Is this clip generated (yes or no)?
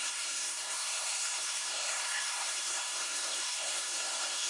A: yes